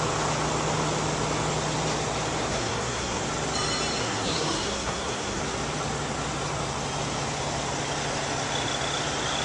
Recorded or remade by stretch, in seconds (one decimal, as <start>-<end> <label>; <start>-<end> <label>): 0.0-2.5 recorded; 2.5-3.2 remade; 3.2-4.0 recorded; 4.0-5.4 remade; 5.4-9.4 recorded